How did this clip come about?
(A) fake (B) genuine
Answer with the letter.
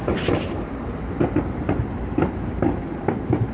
B